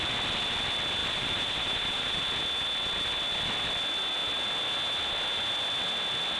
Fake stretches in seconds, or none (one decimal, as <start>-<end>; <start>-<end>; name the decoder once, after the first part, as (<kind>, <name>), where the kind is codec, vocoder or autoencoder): 1.0-2.2 (vocoder, BigVGAN v2)